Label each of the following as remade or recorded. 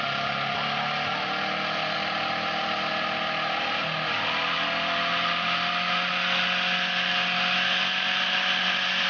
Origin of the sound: recorded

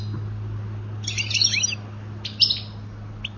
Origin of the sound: recorded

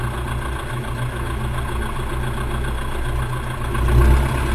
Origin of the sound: recorded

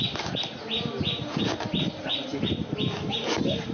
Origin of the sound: recorded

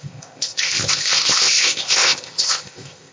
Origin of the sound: remade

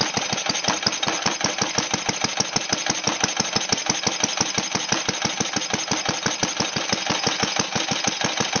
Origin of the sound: recorded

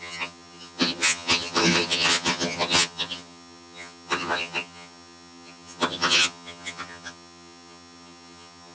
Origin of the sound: remade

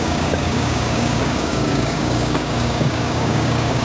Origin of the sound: remade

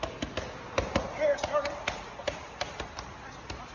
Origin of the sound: recorded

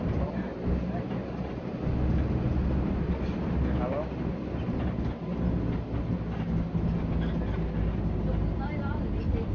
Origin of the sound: recorded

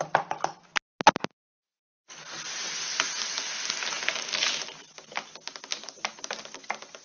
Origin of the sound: recorded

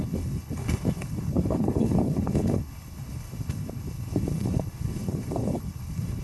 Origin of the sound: remade